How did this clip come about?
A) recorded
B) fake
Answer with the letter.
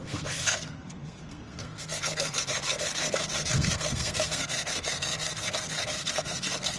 B